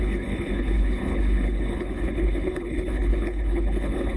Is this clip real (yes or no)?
no